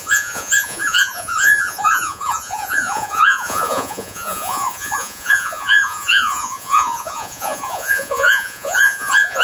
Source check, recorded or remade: remade